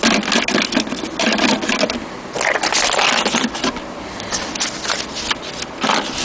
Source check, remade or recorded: recorded